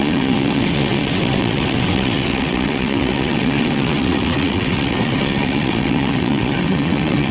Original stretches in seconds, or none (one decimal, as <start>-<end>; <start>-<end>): none